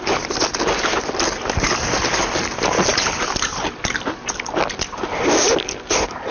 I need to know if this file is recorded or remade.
recorded